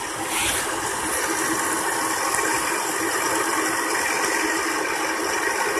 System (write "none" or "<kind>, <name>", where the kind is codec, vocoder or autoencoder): none